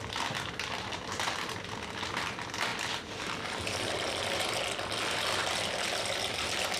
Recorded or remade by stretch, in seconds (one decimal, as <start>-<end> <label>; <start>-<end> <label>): 0.0-6.8 recorded